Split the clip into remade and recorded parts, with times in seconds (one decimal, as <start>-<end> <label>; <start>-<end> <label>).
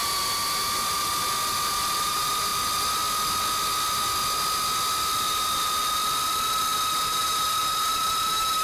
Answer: 0.0-8.6 recorded